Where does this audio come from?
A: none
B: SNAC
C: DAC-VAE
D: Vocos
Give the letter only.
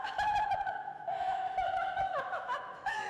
C